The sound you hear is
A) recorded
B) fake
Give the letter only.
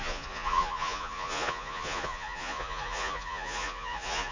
B